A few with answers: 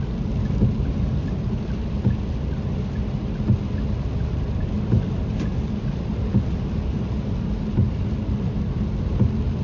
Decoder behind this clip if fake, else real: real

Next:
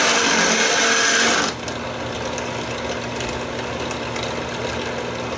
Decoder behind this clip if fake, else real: real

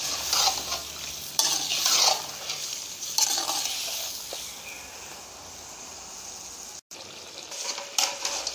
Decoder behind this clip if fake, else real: real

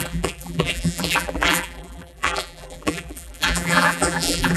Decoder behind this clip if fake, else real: fake, vocoder, BigVGAN v2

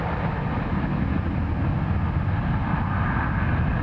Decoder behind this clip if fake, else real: real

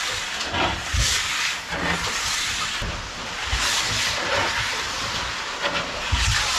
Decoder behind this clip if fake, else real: real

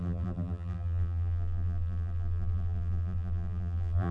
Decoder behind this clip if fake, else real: fake, vocoder, BigVGAN v2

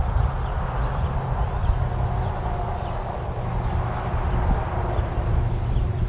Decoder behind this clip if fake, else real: real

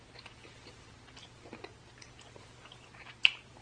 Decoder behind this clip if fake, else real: real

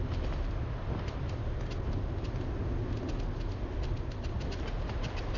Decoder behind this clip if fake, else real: real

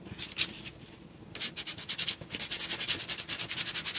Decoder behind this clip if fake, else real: fake, vocoder, BigVGAN v2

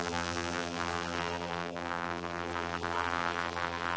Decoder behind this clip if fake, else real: fake, vocoder, BigVGAN v2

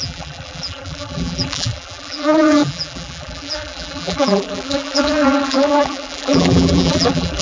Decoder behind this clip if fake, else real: fake, vocoder, BigVGAN v2